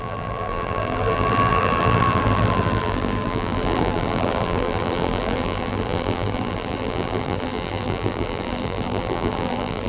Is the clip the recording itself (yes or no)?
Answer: no